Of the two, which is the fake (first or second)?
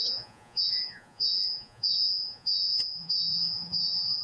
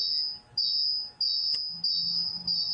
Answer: first